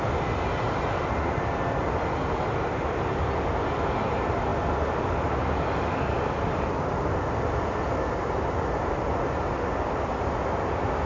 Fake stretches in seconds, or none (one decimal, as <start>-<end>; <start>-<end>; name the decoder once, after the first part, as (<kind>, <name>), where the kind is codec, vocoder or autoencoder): none